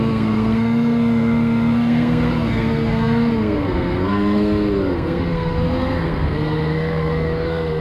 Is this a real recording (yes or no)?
no